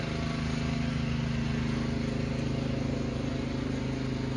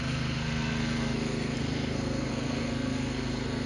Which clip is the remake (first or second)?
second